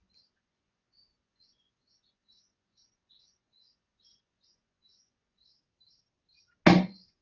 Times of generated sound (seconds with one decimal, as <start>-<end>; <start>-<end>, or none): 0.0-5.4; 6.8-7.2